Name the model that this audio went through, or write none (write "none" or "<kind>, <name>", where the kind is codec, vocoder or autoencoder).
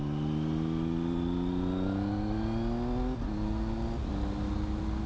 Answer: none